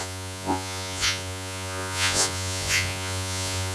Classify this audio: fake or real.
fake